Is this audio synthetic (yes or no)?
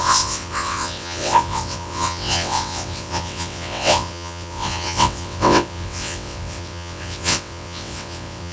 yes